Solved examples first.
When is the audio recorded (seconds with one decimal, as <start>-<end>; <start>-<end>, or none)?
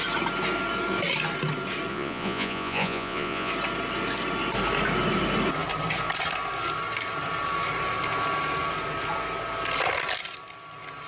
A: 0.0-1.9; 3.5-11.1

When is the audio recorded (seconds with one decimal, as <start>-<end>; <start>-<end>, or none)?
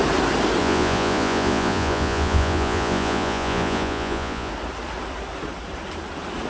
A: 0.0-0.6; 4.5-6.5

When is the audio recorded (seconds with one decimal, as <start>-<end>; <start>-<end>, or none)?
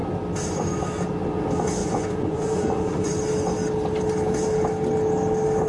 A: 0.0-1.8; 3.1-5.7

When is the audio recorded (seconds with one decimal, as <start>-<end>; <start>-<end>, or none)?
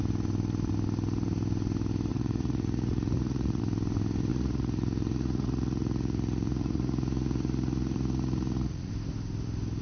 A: 0.0-2.1; 3.6-4.3; 8.9-9.8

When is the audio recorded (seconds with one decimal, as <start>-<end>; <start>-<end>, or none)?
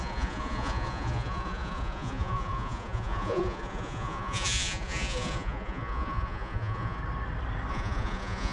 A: 7.0-7.7